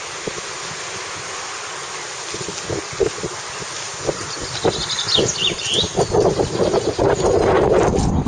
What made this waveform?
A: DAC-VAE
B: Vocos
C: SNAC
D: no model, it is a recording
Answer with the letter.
D